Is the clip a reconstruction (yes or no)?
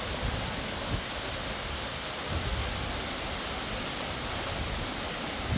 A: no